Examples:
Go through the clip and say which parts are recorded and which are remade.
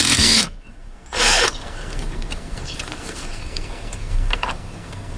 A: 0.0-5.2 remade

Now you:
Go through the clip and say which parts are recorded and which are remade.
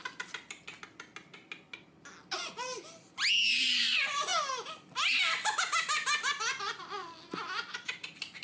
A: 0.0-8.4 recorded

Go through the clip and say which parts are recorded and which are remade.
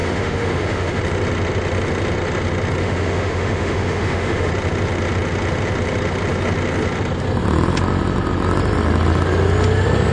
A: 0.0-1.0 remade; 1.0-2.8 recorded; 2.8-4.5 remade; 4.5-10.1 recorded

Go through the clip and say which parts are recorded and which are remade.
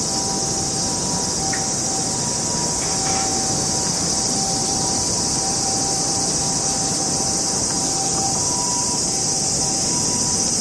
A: 0.0-4.6 recorded; 4.6-9.4 remade; 9.4-10.6 recorded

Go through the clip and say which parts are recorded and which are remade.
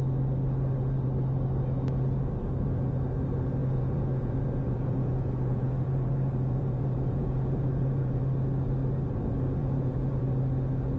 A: 0.0-3.6 recorded; 3.6-8.2 remade; 8.2-9.6 recorded; 9.6-10.2 remade; 10.2-11.0 recorded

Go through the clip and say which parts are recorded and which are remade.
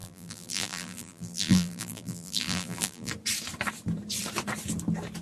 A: 0.0-3.1 remade; 3.1-5.2 recorded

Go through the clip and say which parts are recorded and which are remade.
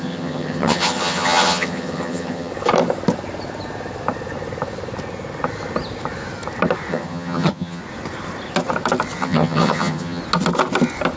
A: 0.0-2.5 remade; 2.5-6.9 recorded; 6.9-7.8 remade; 7.8-9.2 recorded; 9.2-10.2 remade; 10.2-11.2 recorded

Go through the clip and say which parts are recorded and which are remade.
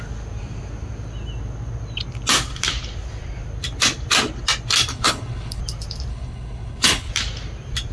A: 0.0-4.9 recorded; 4.9-5.6 remade; 5.6-6.1 recorded; 6.1-7.1 remade; 7.1-7.9 recorded